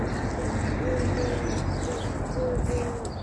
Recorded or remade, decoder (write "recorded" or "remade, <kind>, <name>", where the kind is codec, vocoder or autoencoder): recorded